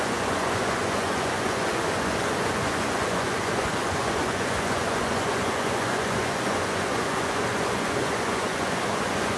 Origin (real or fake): fake